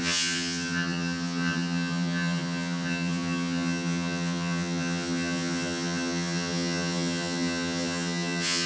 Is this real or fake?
fake